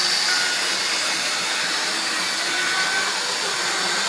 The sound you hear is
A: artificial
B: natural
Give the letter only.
A